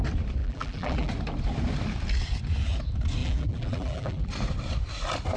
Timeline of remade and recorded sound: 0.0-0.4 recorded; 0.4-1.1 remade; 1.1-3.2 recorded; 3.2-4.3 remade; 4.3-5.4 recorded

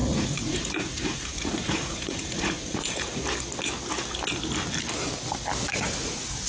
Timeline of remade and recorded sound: 0.0-3.2 remade; 3.2-5.7 recorded; 5.7-6.5 remade

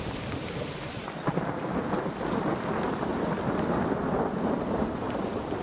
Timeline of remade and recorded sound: 0.0-1.0 remade; 1.0-4.4 recorded; 4.4-5.6 remade